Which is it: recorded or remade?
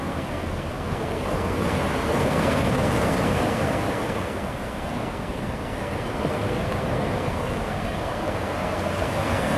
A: remade